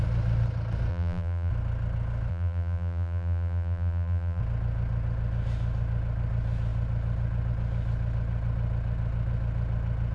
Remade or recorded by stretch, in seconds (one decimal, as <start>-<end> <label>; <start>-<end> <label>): 0.0-0.9 recorded; 0.9-1.5 remade; 1.5-2.3 recorded; 2.3-4.4 remade; 4.4-10.1 recorded